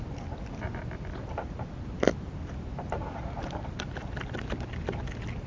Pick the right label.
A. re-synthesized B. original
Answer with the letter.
B